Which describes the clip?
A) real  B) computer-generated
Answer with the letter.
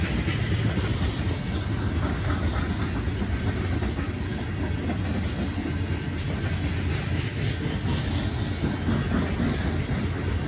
A